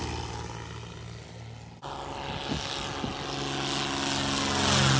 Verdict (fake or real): real